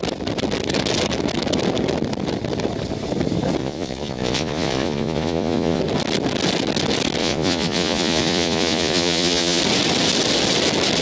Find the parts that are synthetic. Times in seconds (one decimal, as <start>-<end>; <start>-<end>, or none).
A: 3.6-5.8; 7.2-9.6